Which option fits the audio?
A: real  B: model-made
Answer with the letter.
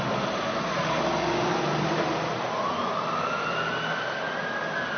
A